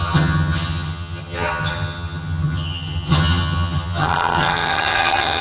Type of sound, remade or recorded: remade